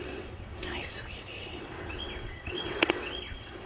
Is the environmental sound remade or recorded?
remade